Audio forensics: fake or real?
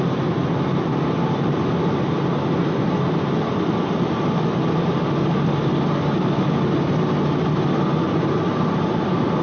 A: real